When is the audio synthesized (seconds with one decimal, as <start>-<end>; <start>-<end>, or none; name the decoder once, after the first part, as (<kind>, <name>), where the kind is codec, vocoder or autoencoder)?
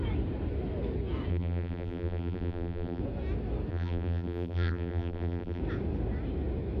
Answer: 1.3-3.0 (vocoder, BigVGAN v2); 3.7-5.6